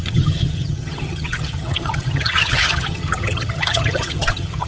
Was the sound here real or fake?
fake